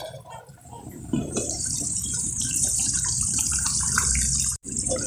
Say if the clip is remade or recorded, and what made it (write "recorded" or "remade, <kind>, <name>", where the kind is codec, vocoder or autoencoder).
remade, vocoder, BigVGAN v2